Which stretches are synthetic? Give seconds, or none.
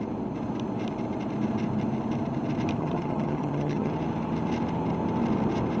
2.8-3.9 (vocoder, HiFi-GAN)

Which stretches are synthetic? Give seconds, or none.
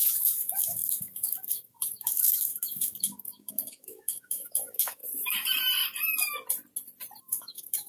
0.0-5.0 (autoencoder, DAC-VAE); 7.2-7.9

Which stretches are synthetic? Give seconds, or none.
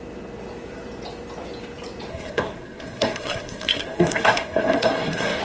2.1-5.4 (codec, SNAC)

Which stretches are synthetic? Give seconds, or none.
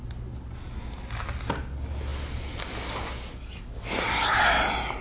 none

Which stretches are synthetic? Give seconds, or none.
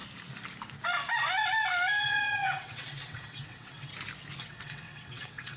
2.0-3.9 (vocoder, WaveNeXt); 4.4-5.6